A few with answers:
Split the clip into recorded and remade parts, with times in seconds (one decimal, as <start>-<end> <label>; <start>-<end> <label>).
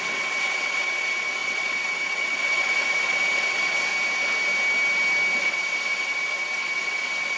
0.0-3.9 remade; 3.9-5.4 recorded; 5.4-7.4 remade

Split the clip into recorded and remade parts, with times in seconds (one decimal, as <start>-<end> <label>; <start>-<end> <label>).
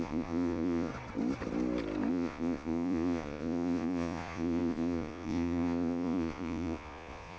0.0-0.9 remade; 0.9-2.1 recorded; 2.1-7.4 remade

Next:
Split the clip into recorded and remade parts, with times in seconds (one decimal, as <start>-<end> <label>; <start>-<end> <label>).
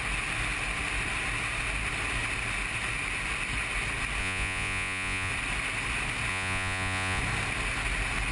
0.0-4.2 recorded; 4.2-5.3 remade; 5.3-6.3 recorded; 6.3-7.2 remade; 7.2-8.3 recorded